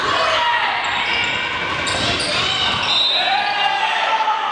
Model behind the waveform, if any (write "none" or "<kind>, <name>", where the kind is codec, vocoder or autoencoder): none